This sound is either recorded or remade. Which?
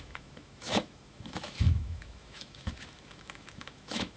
remade